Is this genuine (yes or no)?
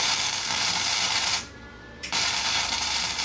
no